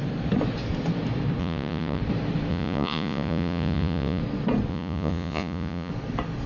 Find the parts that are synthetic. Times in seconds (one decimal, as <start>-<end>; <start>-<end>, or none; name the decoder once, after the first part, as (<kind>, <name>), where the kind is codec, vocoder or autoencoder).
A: 1.4-2.0 (vocoder, Vocos); 2.5-4.2; 4.7-5.9